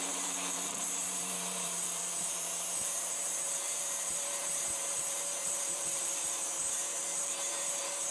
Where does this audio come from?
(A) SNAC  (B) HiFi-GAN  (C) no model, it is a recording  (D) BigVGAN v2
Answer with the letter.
D